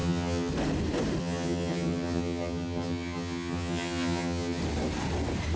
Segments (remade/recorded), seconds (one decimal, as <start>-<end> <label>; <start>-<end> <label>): 0.0-0.5 remade; 0.5-1.2 recorded; 1.2-4.6 remade; 4.6-5.6 recorded

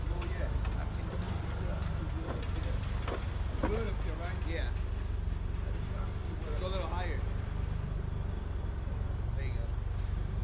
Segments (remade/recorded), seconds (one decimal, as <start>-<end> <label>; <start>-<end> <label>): 0.0-10.4 recorded